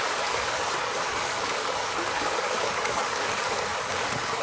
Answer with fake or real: fake